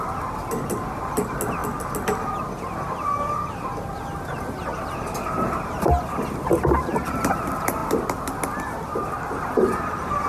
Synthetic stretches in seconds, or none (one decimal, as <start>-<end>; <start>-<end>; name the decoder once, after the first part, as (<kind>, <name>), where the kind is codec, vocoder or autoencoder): none